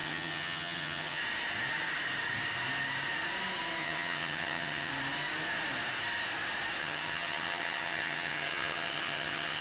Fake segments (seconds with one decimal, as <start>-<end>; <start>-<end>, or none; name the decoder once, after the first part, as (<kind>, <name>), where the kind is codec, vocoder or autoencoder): 0.0-1.2 (vocoder, HiFi-GAN); 3.8-4.9; 6.8-9.6